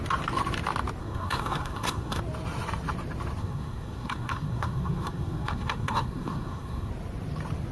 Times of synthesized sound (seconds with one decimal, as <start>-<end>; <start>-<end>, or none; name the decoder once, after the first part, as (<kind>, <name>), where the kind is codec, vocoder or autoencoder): 1.0-2.2 (codec, SNAC); 3.4-6.9